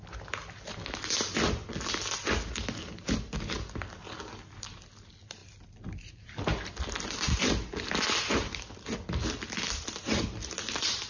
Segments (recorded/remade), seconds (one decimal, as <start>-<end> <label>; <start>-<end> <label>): 0.0-11.1 recorded